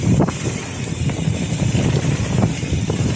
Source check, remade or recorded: remade